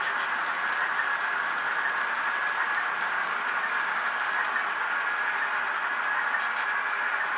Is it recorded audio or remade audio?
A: recorded